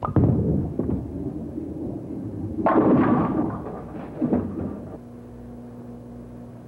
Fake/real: real